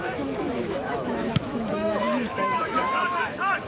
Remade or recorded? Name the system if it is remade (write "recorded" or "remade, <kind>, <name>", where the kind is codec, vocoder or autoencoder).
remade, autoencoder, DAC-VAE